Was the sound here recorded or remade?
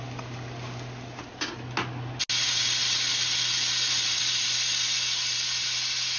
recorded